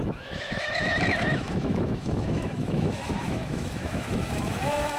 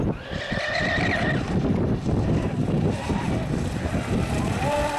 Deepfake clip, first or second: first